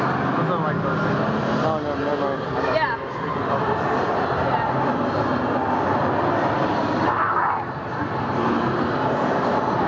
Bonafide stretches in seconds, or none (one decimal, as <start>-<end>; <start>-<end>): 0.0-2.1; 4.2-9.9